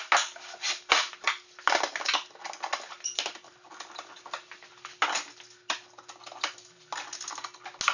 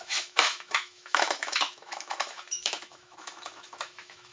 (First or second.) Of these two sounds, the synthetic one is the second